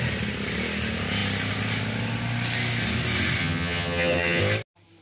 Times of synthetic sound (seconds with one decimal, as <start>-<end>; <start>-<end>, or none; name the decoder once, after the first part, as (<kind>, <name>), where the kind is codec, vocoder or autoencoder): 3.4-4.4 (vocoder, HiFi-GAN)